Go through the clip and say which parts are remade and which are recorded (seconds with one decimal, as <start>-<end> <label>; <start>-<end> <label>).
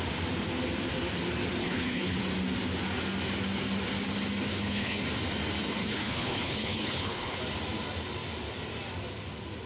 0.0-1.6 recorded; 1.6-2.2 remade; 2.2-4.5 recorded; 4.5-5.0 remade; 5.0-5.8 recorded; 5.8-7.4 remade; 7.4-9.7 recorded